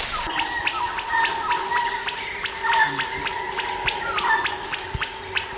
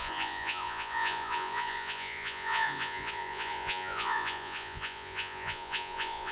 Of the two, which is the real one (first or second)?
first